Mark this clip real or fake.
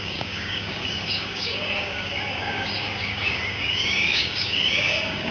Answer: fake